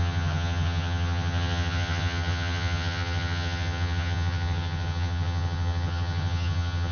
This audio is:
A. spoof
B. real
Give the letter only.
A